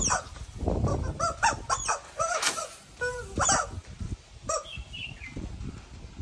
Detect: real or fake real